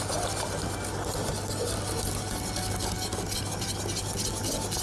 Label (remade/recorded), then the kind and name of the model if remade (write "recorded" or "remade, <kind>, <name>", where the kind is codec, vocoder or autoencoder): recorded